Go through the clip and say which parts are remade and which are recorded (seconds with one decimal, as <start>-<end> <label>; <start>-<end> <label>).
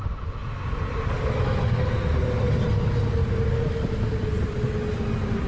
0.0-5.5 recorded